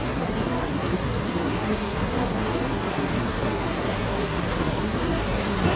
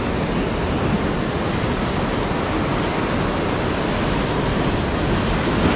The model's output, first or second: first